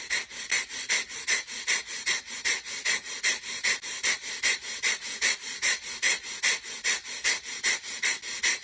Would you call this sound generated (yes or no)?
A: no